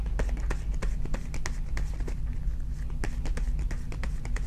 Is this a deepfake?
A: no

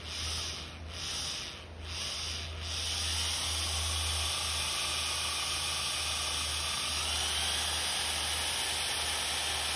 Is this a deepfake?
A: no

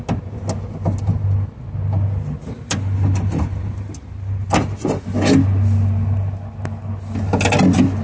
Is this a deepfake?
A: no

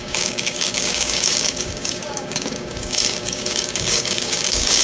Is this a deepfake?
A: yes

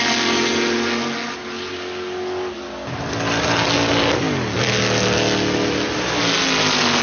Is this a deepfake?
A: no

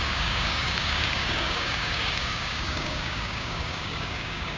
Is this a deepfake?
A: yes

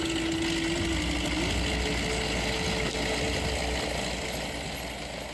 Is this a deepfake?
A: no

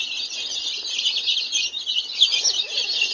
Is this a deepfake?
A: no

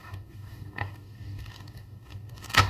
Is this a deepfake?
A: yes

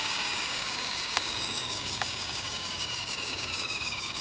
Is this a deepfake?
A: yes